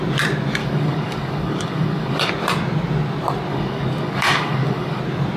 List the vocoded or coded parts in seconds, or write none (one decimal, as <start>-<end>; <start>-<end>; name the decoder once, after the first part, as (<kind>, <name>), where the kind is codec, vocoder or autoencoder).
0.6-2.3 (codec, DAC); 3.5-5.0